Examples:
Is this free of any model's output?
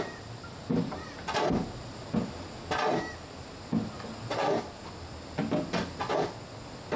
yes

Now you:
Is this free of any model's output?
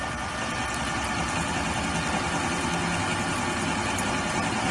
yes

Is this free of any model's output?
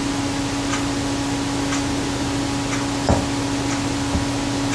yes